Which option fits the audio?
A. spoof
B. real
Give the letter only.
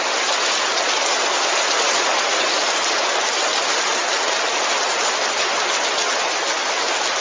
B